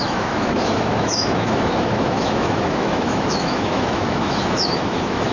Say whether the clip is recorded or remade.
remade